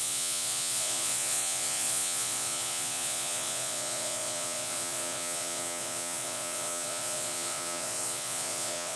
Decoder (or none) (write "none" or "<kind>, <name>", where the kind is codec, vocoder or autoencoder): vocoder, Vocos